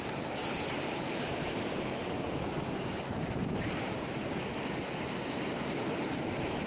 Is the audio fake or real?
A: fake